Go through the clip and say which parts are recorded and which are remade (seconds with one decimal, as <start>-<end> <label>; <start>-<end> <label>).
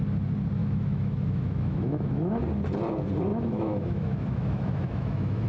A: 0.0-0.6 recorded; 0.6-2.3 remade; 2.3-3.3 recorded; 3.3-5.5 remade